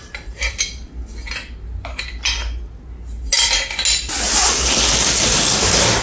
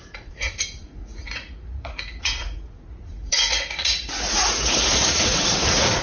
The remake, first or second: second